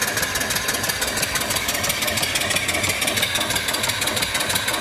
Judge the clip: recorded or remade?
recorded